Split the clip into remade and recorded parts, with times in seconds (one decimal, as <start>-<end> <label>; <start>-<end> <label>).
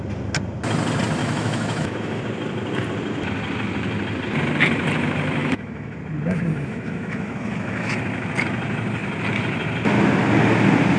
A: 0.0-1.2 recorded; 1.2-2.2 remade; 2.2-5.4 recorded; 5.4-6.0 remade; 6.0-6.5 recorded; 6.5-8.0 remade; 8.0-11.0 recorded